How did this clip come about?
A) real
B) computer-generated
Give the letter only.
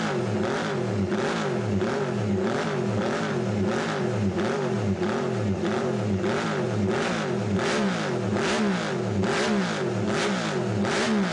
A